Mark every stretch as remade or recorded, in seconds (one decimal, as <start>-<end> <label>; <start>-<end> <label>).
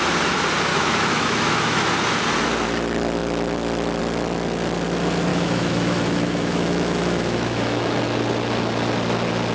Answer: 0.0-0.7 recorded; 0.7-1.9 remade; 1.9-5.3 recorded; 5.3-8.0 remade; 8.0-9.5 recorded